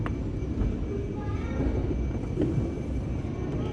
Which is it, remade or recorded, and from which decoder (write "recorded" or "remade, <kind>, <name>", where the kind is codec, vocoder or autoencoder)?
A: recorded